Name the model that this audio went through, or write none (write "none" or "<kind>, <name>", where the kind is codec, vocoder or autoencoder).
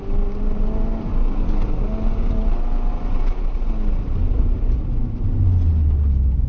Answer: none